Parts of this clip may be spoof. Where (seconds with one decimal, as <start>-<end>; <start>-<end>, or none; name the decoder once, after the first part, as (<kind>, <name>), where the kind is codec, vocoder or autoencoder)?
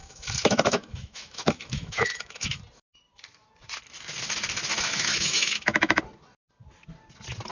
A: 0.0-2.6 (autoencoder, DAC-VAE); 4.7-6.0